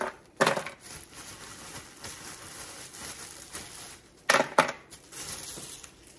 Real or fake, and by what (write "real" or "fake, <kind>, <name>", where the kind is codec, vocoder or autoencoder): real